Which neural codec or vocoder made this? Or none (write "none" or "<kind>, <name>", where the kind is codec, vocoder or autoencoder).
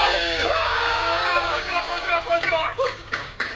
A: codec, DAC